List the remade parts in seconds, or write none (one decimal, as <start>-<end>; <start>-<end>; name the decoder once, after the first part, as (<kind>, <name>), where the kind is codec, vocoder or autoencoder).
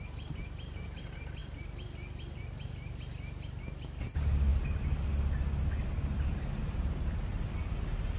none